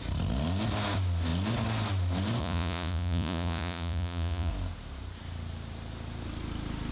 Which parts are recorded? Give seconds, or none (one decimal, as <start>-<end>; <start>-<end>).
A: 0.0-2.4; 4.5-6.9